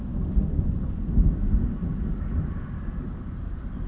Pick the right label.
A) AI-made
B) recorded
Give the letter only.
B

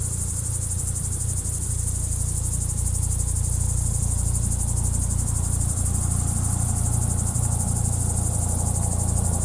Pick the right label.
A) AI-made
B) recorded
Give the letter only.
A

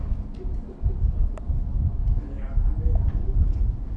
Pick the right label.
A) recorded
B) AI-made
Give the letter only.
A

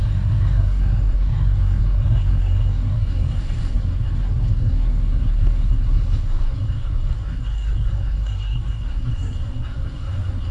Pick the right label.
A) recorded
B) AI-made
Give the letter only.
B